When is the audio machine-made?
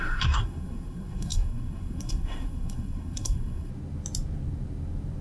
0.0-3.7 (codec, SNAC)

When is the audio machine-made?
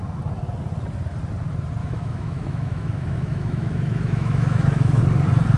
1.8-5.0 (autoencoder, DAC-VAE)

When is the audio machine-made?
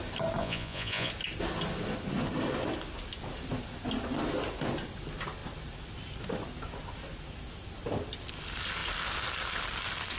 0.4-1.1 (vocoder, Vocos)